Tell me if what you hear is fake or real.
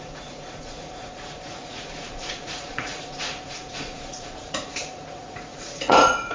fake